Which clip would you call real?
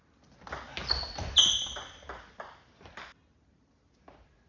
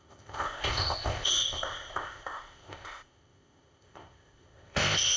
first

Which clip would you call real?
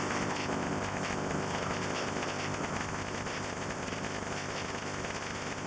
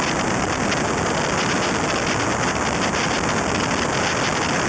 second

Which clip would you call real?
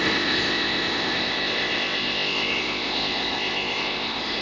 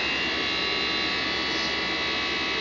second